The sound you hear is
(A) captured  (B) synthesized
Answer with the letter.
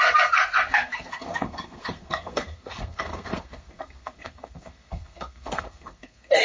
B